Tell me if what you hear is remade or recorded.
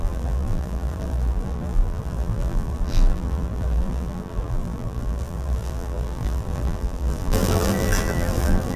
remade